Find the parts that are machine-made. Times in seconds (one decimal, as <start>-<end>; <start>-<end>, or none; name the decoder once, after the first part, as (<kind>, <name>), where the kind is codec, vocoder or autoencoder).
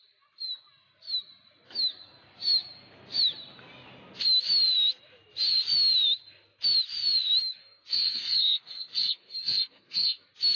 7.6-10.2 (codec, SNAC)